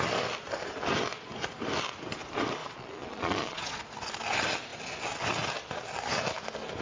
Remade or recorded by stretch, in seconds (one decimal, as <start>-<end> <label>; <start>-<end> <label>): 0.0-2.6 recorded; 2.6-3.8 remade; 3.8-6.8 recorded